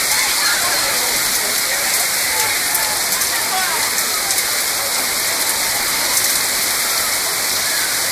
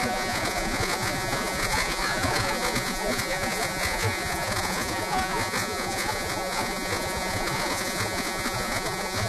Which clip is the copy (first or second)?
second